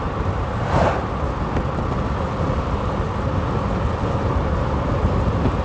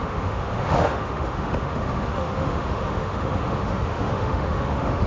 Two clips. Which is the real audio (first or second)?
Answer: first